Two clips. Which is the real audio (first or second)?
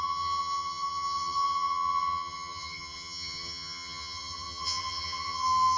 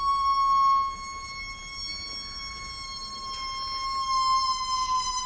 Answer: second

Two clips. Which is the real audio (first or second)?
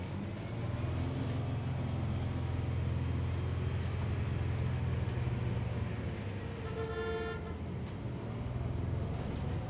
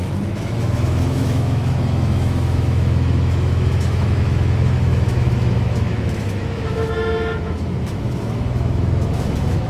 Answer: first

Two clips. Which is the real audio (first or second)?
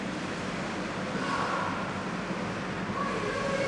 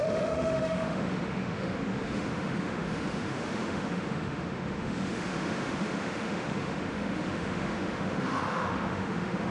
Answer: first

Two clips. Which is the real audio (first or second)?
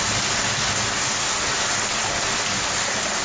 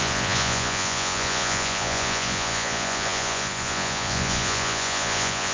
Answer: first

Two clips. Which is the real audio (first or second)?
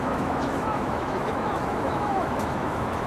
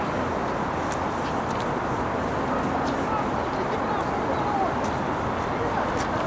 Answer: second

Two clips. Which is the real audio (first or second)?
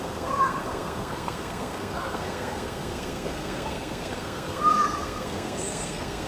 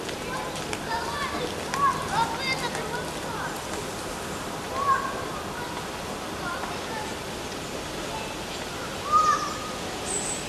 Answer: second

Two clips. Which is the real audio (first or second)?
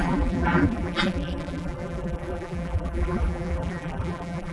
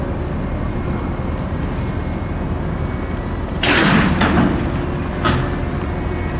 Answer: second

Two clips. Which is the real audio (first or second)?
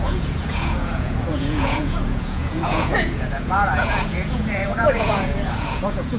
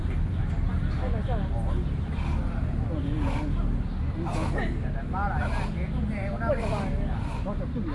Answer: second